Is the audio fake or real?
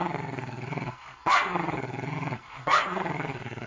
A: fake